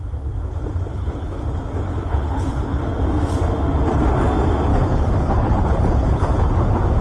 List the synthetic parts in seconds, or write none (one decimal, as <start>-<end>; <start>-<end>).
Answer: 0.9-1.4; 1.9-2.8; 4.7-6.5